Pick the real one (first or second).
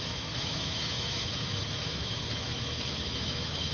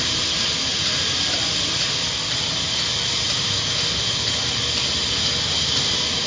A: second